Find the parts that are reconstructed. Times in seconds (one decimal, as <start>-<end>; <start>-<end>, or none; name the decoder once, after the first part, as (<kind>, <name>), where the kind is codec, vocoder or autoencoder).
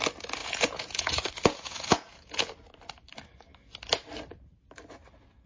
0.4-2.5 (vocoder, Vocos)